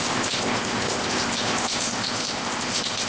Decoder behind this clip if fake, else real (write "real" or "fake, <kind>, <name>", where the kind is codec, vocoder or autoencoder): fake, codec, ZipCodec